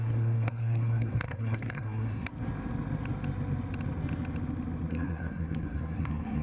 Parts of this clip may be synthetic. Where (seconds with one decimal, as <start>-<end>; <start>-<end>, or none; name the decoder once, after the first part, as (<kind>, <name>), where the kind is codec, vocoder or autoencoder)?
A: 0.0-2.3 (codec, SNAC); 4.9-6.4